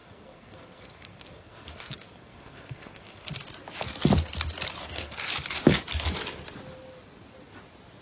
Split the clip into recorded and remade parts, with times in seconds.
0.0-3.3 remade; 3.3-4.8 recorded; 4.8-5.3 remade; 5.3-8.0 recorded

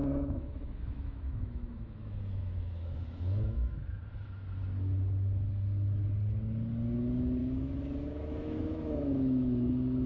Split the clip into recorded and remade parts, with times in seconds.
0.0-4.0 remade; 4.0-7.4 recorded; 7.4-9.7 remade; 9.7-10.1 recorded

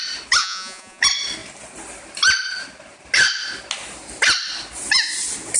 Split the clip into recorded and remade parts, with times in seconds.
0.0-0.4 recorded; 0.4-1.0 remade; 1.0-5.6 recorded

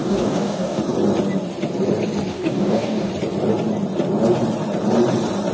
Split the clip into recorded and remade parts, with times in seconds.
0.0-0.8 remade; 0.8-2.3 recorded; 2.3-3.1 remade; 3.1-5.5 recorded